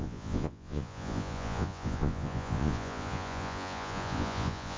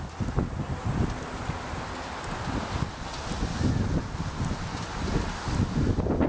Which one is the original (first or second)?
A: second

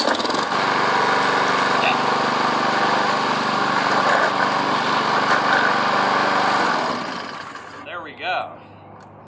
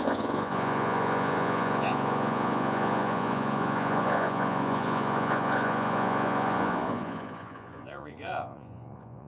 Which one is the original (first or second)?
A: first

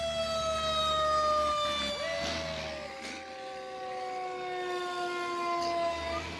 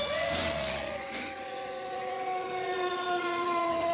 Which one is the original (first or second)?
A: first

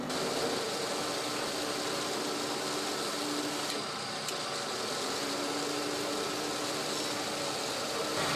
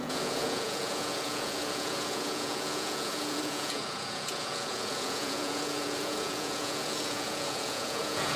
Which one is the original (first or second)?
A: first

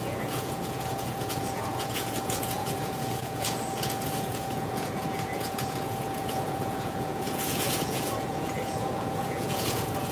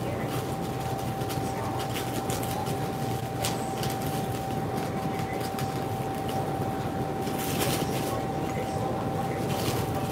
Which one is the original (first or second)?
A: second